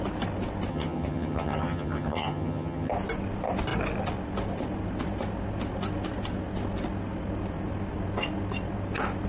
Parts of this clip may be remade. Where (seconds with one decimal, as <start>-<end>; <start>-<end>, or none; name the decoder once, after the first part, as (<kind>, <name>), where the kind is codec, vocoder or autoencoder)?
0.7-2.9 (vocoder, HiFi-GAN)